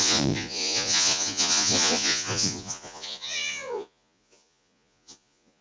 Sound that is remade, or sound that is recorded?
remade